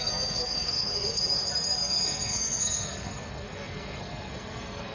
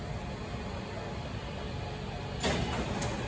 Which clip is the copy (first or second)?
first